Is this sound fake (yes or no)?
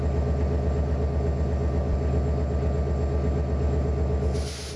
no